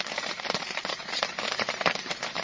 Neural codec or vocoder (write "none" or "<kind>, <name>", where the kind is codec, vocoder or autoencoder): vocoder, BigVGAN v2